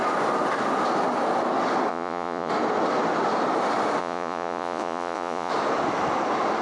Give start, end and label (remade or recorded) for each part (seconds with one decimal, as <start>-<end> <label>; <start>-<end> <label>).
0.0-1.9 recorded; 1.9-2.5 remade; 2.5-4.0 recorded; 4.0-5.5 remade; 5.5-6.6 recorded